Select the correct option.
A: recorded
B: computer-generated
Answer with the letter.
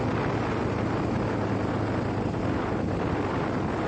A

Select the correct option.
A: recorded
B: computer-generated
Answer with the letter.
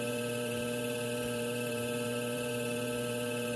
B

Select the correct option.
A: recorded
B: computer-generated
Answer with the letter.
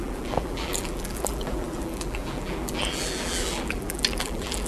B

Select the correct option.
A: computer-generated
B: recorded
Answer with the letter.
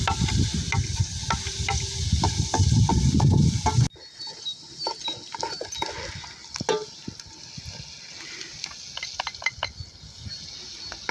B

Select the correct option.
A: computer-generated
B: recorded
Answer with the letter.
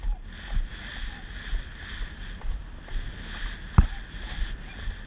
B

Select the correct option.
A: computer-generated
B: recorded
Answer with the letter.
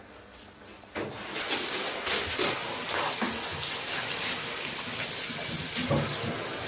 B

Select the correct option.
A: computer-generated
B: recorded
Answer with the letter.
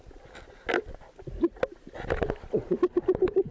B